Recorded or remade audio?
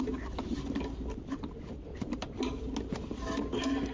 recorded